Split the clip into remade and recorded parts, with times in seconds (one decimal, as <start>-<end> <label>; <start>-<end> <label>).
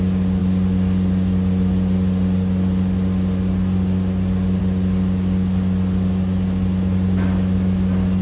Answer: 0.0-8.2 recorded